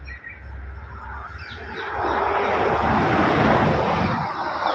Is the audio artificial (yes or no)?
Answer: no